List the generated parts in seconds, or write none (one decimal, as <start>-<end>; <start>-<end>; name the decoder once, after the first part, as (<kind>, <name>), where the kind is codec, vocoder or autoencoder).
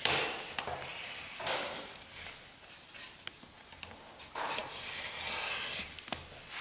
0.9-4.0 (vocoder, BigVGAN v2)